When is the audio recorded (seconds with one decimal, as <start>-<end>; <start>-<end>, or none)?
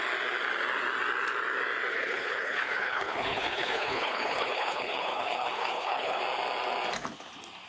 0.0-1.9; 6.2-7.7